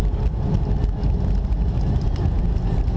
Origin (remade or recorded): recorded